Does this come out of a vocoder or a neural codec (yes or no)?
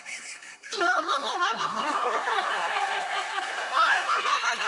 yes